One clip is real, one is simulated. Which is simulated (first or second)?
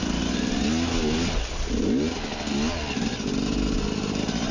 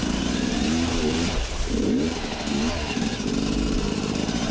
second